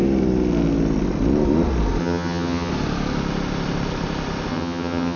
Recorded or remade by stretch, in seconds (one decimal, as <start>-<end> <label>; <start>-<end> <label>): 0.0-2.0 recorded; 2.0-2.7 remade; 2.7-4.5 recorded; 4.5-5.2 remade